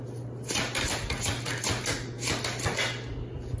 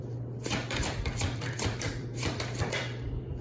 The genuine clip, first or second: first